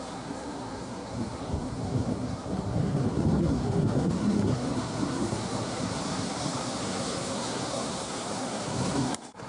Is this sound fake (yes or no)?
yes